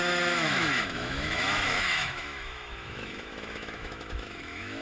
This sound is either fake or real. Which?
fake